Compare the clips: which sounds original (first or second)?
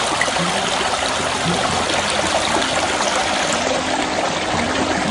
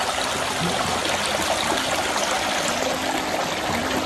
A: second